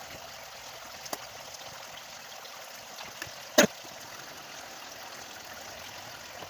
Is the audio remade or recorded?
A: recorded